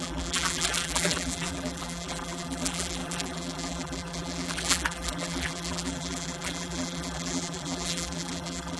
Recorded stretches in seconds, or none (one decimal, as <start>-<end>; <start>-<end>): none